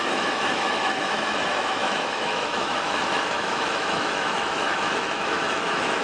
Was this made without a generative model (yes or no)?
no